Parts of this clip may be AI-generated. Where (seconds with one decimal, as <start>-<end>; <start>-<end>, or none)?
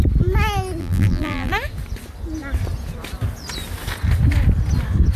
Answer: 0.8-1.5